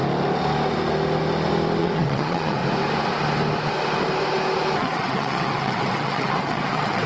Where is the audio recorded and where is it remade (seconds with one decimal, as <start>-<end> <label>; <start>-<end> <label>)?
0.0-1.8 recorded; 1.8-2.6 remade; 2.6-4.8 recorded; 4.8-7.1 remade